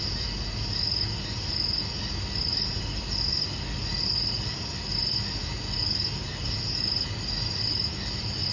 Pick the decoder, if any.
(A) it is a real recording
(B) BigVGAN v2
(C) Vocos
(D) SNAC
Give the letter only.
A